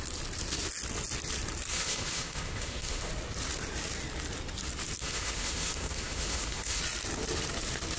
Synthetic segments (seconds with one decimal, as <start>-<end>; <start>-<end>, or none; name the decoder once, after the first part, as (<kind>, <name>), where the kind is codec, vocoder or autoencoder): 1.7-3.1 (autoencoder, DAC-VAE); 5.0-6.8